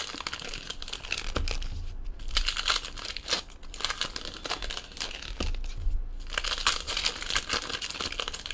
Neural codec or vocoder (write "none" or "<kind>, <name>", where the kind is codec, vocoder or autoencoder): none